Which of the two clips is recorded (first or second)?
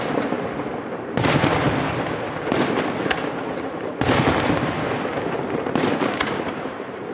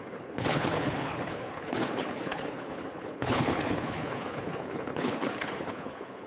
first